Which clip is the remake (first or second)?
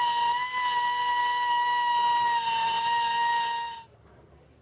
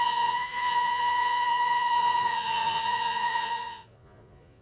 second